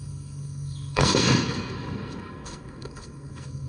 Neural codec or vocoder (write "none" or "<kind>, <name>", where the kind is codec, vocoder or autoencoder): codec, SNAC